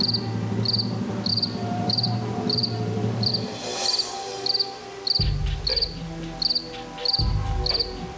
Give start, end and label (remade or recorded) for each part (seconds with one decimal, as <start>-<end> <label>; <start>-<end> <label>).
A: 0.0-1.3 recorded; 1.3-3.3 remade; 3.3-8.2 recorded